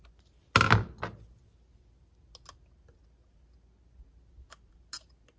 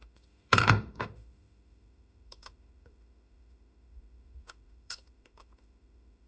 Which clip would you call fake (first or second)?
second